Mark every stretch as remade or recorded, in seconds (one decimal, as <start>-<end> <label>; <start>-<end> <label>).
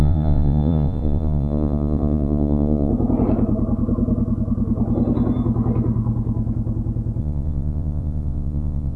0.0-2.9 remade; 2.9-7.2 recorded; 7.2-9.0 remade